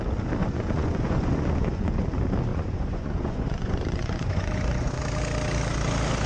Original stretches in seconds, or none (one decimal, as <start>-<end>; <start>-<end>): 0.0-0.4; 2.0-2.5; 5.0-6.3